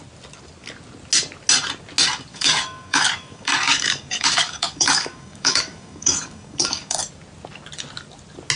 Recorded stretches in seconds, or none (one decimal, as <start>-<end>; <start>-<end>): 0.0-2.3; 7.0-8.6